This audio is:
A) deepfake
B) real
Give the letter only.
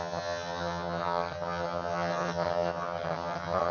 A